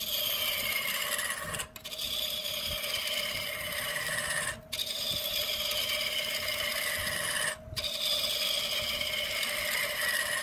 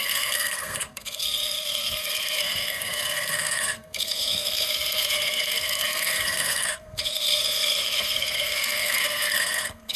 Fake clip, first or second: second